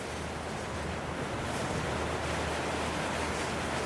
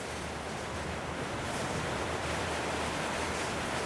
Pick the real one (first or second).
first